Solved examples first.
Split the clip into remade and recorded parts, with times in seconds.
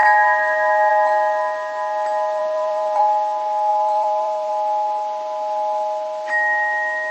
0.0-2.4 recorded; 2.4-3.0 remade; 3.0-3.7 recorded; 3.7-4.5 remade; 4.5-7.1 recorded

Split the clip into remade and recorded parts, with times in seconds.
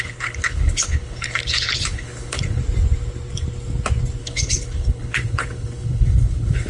0.0-2.6 remade; 2.6-4.2 recorded; 4.2-6.7 remade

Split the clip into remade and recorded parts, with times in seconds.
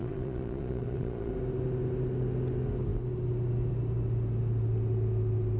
0.0-1.3 remade; 1.3-5.6 recorded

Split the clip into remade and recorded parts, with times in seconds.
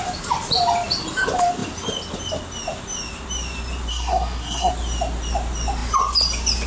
0.0-3.9 recorded; 3.9-4.7 remade; 4.7-6.7 recorded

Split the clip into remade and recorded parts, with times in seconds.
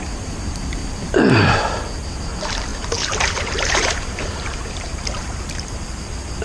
0.0-0.8 remade; 0.8-2.3 recorded; 2.3-6.4 remade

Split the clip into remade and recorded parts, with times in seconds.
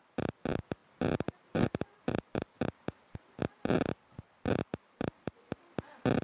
0.0-0.8 recorded; 0.8-3.4 remade; 3.4-4.6 recorded; 4.6-5.5 remade; 5.5-6.2 recorded